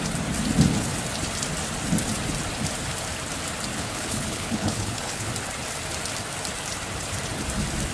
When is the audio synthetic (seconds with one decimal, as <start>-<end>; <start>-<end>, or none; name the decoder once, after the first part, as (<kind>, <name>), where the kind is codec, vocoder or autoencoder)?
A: 3.7-5.3 (codec, HILCodec)